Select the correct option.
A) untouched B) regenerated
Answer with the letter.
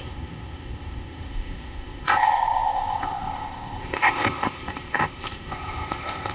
B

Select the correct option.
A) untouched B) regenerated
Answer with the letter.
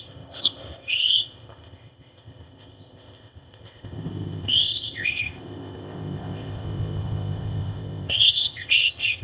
B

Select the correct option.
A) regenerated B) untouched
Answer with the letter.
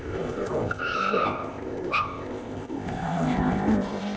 A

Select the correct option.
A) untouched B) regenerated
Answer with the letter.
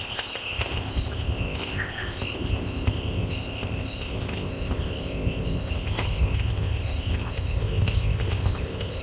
B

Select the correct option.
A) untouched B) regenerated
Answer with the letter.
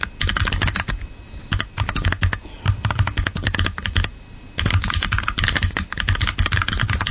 A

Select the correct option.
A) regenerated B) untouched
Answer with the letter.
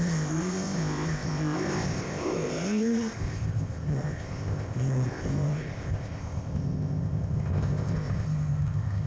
A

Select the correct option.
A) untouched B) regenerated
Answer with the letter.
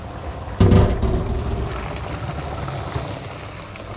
A